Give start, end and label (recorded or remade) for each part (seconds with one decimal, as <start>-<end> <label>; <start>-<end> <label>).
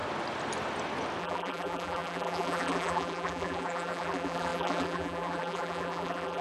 0.0-1.2 recorded; 1.2-6.4 remade